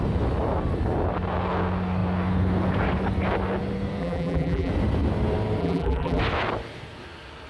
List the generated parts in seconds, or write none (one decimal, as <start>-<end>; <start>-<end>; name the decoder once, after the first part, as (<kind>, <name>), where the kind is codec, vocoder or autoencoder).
4.0-4.7 (vocoder, BigVGAN v2); 5.6-6.2